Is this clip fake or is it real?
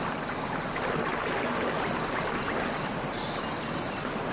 real